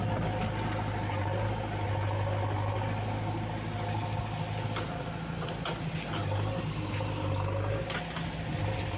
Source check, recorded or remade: recorded